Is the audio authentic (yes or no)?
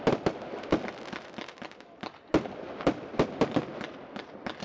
yes